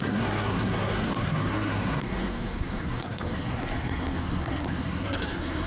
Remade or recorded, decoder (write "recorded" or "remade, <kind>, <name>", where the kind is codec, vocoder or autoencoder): remade, codec, SNAC